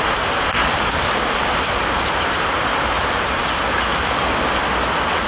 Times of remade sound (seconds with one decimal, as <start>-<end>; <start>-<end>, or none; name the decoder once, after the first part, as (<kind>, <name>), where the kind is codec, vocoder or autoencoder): none